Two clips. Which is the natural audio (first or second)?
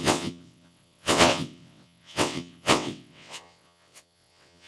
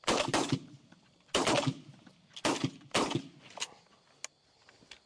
second